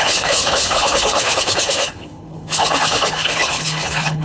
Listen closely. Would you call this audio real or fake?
fake